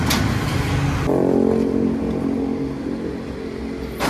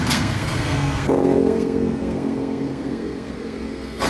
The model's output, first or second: second